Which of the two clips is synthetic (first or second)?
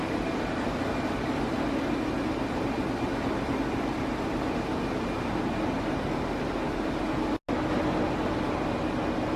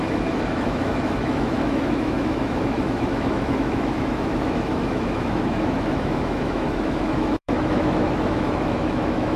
second